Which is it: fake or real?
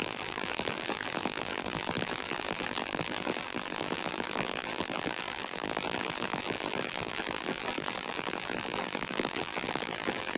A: fake